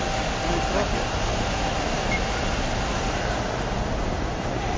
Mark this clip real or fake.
real